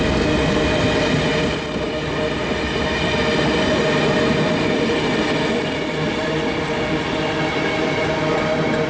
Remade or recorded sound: recorded